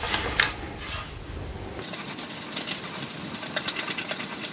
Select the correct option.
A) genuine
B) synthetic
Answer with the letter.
A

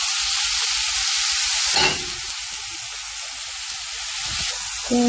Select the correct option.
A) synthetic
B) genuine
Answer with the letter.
B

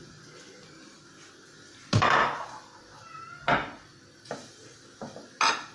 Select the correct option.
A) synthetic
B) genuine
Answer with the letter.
B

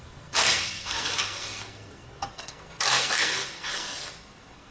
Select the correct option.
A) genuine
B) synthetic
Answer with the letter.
B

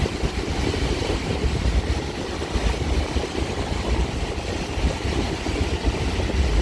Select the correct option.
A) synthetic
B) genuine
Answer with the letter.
B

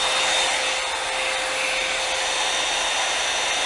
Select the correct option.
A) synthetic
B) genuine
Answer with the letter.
B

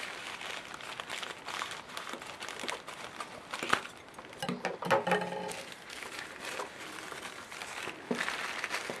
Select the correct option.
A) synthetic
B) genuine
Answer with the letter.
B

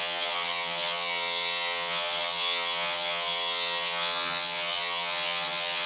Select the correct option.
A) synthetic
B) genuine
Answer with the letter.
A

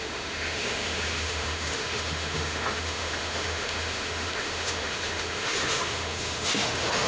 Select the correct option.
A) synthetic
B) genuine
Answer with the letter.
A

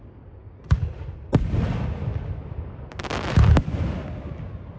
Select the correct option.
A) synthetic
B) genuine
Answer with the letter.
B